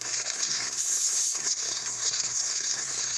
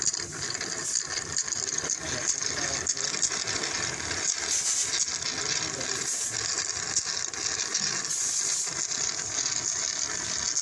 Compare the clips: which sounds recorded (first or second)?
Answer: second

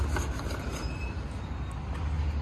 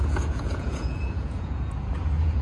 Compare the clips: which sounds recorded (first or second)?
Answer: first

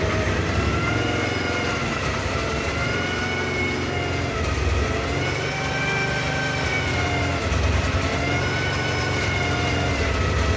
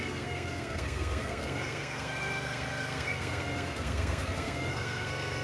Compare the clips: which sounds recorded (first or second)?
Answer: first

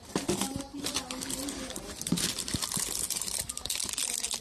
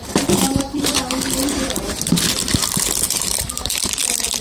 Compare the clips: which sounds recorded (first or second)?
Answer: first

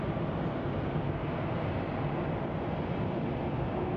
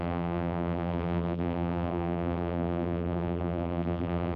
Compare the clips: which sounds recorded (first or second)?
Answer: first